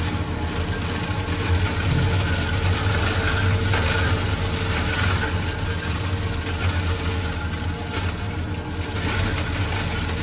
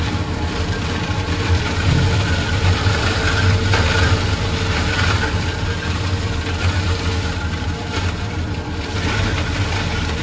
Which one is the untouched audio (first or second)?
first